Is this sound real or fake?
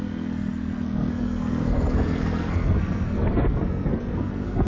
fake